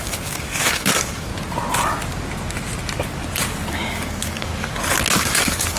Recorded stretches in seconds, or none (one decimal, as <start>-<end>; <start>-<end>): 1.3-3.7; 4.5-5.1